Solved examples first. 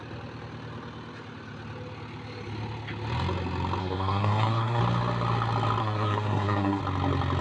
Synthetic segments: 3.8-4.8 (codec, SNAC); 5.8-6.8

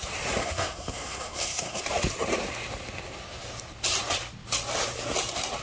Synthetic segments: 0.4-1.8 (codec, SNAC)

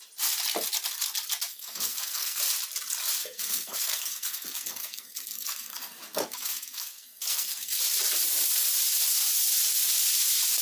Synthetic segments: 1.5-2.4 (codec, SNAC); 3.2-7.8

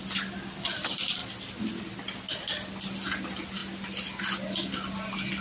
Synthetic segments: none

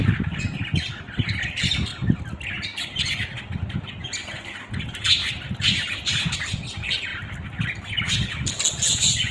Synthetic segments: none